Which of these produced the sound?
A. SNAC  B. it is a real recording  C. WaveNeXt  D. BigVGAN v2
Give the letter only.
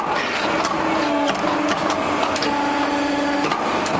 B